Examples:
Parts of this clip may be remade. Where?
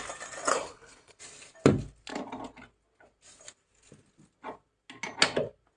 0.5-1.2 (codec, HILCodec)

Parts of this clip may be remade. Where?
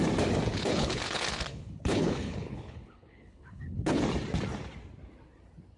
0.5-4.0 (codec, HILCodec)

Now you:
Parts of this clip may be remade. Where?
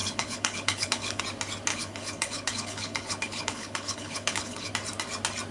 0.0-1.2 (codec, HILCodec); 1.7-4.7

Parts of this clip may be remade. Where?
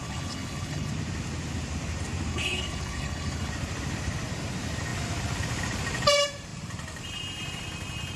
0.0-0.9 (codec, HILCodec); 2.3-3.5